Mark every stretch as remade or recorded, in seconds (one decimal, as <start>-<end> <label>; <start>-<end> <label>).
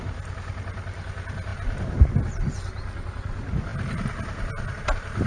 0.0-5.3 recorded